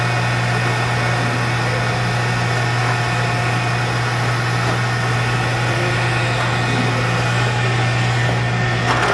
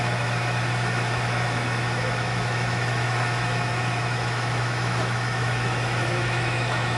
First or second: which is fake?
second